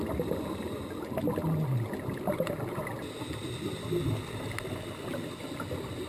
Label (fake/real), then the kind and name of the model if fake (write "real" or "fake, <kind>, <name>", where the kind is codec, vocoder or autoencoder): real